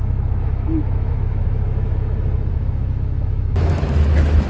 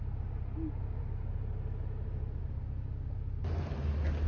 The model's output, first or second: first